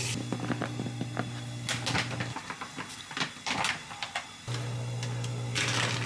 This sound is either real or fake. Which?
real